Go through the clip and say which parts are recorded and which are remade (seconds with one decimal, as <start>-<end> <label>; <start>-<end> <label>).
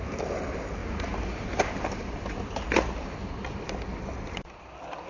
0.0-5.1 recorded